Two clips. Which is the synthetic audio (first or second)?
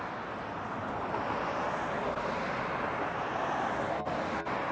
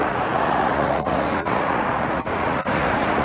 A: second